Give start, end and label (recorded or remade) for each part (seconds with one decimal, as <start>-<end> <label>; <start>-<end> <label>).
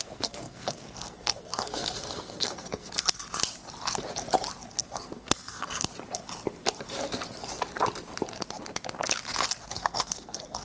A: 0.0-3.2 remade; 3.2-4.7 recorded; 4.7-5.9 remade; 5.9-9.6 recorded; 9.6-10.6 remade